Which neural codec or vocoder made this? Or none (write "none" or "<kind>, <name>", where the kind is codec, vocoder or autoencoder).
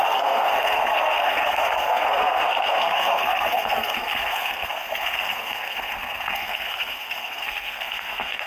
codec, SNAC